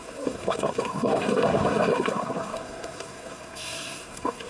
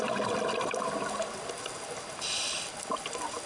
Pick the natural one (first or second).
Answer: second